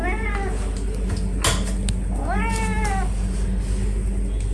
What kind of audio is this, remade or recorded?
recorded